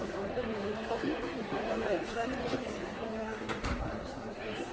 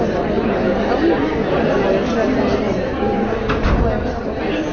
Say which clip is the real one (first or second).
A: second